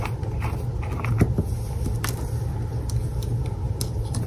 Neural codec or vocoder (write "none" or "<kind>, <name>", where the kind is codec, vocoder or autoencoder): none